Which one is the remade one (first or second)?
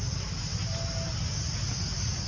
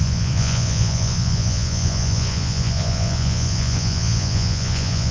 second